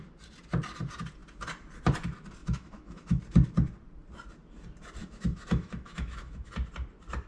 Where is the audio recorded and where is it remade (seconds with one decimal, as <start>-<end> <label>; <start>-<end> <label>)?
0.0-2.4 recorded; 2.4-3.2 remade; 3.2-5.0 recorded; 5.0-6.5 remade; 6.5-7.3 recorded